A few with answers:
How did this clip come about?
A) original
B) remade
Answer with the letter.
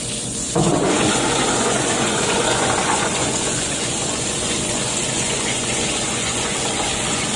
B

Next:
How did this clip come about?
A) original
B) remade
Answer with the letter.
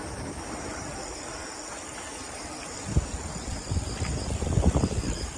A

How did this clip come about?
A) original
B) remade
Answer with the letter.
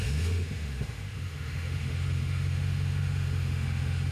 B